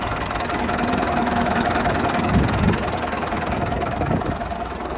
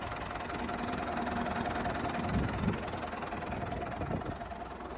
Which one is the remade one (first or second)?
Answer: first